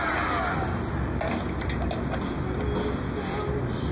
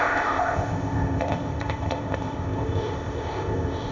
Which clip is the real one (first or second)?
first